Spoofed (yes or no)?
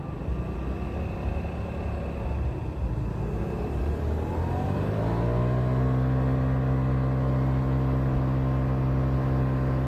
no